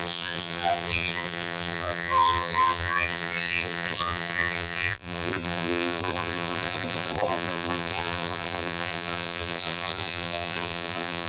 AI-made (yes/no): yes